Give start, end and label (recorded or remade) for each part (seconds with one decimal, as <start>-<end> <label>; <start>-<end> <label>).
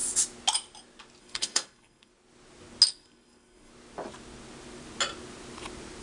0.0-1.2 recorded; 1.2-2.1 remade; 2.1-2.9 recorded; 2.9-3.7 remade; 3.7-6.0 recorded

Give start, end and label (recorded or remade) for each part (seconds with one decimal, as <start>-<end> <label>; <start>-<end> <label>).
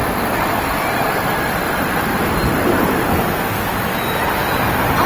0.0-3.1 remade; 3.1-3.7 recorded; 3.7-4.3 remade; 4.3-5.1 recorded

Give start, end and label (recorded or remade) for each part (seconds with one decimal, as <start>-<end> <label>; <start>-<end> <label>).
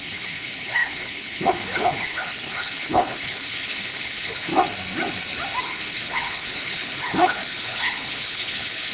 0.0-4.5 remade; 4.5-5.6 recorded; 5.6-8.9 remade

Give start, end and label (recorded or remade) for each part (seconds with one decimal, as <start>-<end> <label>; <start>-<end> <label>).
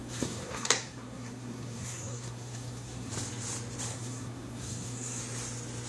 0.0-3.1 remade; 3.1-3.9 recorded; 3.9-5.2 remade; 5.2-5.9 recorded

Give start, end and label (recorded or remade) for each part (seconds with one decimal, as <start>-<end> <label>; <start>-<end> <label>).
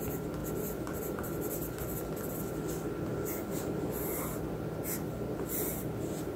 0.0-6.4 recorded